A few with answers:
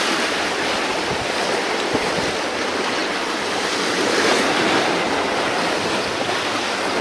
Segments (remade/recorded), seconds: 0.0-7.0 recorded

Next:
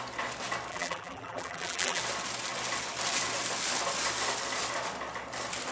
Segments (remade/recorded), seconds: 0.0-0.7 recorded; 0.7-2.0 remade; 2.0-5.7 recorded